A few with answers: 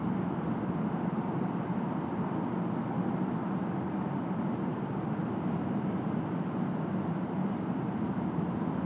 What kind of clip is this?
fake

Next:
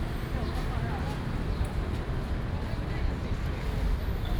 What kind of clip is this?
real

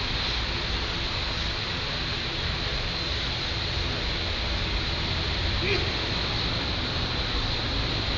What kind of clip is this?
real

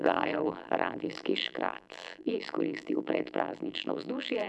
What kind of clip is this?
fake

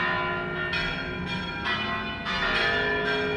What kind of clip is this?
real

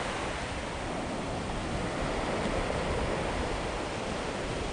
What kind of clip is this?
real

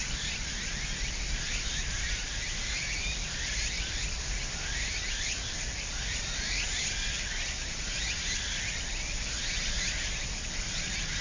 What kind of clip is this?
real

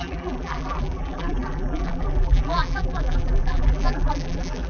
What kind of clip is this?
fake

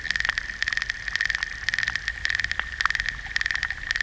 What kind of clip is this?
fake